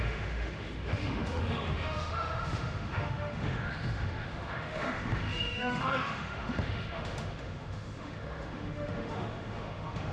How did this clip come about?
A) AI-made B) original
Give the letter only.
A